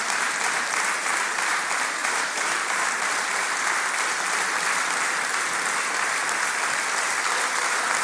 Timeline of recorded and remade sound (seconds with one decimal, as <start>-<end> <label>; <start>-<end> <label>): 0.0-1.0 recorded; 1.0-1.5 remade; 1.5-2.0 recorded; 2.0-3.4 remade; 3.4-8.0 recorded